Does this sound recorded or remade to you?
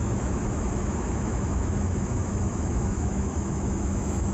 remade